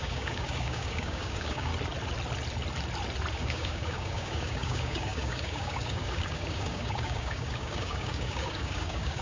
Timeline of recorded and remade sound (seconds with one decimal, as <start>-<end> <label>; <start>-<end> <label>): 0.0-1.7 remade; 1.7-3.3 recorded; 3.3-9.2 remade